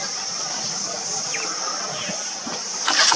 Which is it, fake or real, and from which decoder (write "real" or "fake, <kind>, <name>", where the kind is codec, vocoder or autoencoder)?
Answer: real